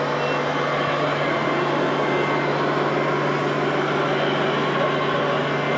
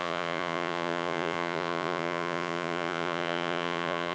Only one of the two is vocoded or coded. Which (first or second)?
second